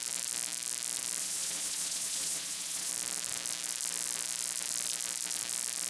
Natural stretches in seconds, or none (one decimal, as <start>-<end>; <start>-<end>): 0.0-1.2; 2.9-5.9